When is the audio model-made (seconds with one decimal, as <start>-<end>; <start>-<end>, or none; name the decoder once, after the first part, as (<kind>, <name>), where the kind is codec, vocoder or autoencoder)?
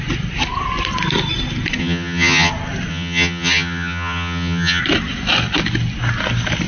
1.8-2.5 (vocoder, HiFi-GAN); 2.9-4.8